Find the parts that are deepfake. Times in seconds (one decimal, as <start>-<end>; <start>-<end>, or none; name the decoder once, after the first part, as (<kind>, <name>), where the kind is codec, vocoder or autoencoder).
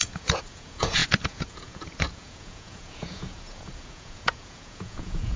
0.0-5.4 (vocoder, Vocos)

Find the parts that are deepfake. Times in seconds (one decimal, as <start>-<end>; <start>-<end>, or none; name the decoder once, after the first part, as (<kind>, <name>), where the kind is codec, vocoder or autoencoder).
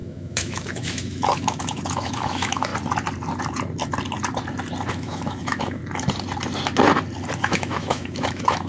0.0-2.7 (autoencoder, DAC-VAE); 4.9-5.8; 7.4-8.7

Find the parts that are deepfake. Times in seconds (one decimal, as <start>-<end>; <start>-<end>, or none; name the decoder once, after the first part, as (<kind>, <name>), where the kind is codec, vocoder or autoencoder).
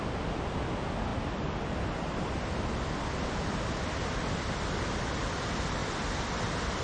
5.8-6.3 (vocoder, BigVGAN v2)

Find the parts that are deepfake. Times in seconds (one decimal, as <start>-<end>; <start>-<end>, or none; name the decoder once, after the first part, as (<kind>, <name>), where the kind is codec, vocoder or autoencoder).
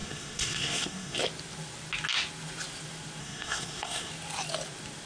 0.0-1.2 (codec, SNAC); 3.2-4.1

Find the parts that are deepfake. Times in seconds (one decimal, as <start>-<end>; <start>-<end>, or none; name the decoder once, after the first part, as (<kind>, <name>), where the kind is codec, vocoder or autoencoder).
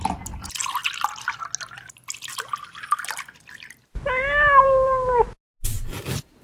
none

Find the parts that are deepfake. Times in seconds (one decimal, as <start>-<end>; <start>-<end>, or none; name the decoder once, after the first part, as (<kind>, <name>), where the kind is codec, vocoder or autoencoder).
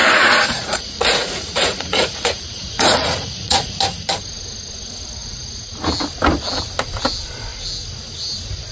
0.0-3.8 (vocoder, Vocos); 5.2-5.7